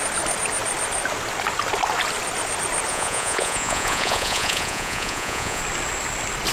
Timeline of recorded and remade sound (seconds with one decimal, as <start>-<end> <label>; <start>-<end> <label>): 0.0-2.9 recorded; 2.9-5.6 remade; 5.6-6.5 recorded